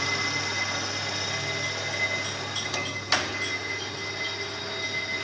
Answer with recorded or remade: recorded